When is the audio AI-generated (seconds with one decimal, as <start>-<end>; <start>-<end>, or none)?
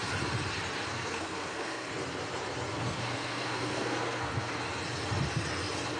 0.9-1.9; 2.7-4.5